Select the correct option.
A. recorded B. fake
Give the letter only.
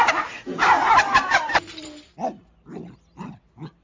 A